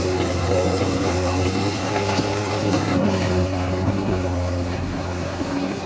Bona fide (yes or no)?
no